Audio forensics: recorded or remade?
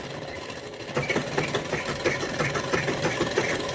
recorded